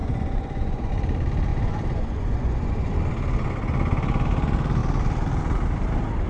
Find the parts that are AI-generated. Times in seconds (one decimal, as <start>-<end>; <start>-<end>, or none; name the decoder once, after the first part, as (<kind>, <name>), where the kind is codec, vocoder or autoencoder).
0.0-0.9 (vocoder, Vocos); 1.5-2.9